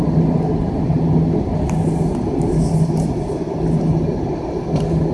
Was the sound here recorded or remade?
recorded